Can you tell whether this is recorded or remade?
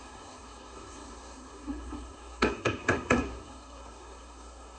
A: remade